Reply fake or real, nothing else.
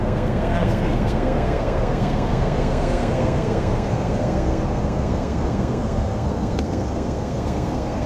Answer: fake